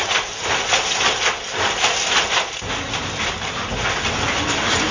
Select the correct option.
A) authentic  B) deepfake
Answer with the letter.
A